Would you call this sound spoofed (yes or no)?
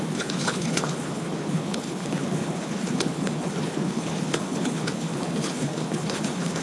yes